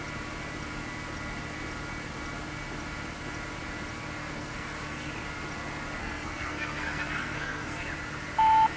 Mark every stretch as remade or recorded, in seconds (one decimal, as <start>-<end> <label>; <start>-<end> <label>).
0.0-4.2 recorded; 4.2-5.1 remade; 5.1-6.0 recorded; 6.0-7.9 remade; 7.9-8.8 recorded